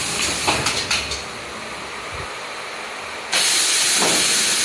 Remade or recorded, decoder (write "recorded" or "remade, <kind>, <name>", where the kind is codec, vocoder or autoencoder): recorded